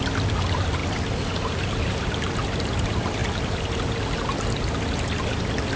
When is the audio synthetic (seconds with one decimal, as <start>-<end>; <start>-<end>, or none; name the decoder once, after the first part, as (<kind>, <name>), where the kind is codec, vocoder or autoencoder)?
0.8-1.6 (vocoder, BigVGAN v2)